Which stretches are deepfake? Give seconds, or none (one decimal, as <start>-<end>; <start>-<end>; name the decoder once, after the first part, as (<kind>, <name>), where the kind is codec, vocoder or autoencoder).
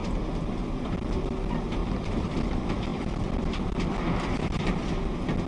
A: 0.0-0.8 (vocoder, BigVGAN v2); 1.8-2.3; 2.9-3.4